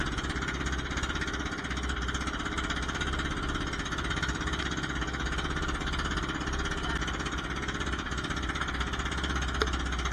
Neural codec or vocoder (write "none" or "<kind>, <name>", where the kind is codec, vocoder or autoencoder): none